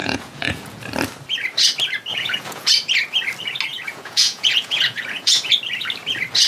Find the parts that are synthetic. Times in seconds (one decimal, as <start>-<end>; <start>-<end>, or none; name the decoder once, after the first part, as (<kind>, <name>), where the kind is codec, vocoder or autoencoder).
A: 0.0-0.8 (vocoder, Vocos); 2.1-2.7; 3.7-5.5